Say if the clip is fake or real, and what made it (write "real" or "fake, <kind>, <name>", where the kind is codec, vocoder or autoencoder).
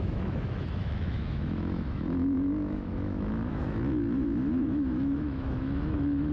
fake, autoencoder, DAC-VAE